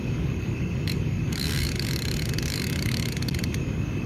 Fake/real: fake